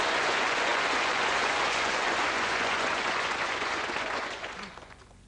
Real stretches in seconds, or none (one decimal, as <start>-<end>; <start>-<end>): none